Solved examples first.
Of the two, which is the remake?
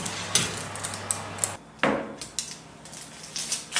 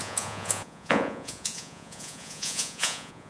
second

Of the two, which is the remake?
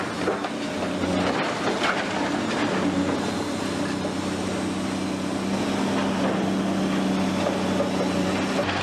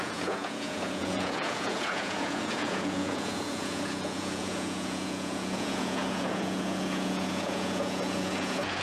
second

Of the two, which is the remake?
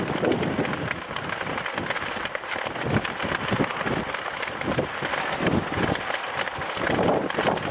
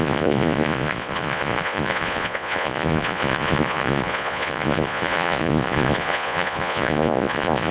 second